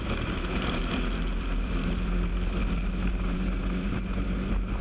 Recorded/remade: remade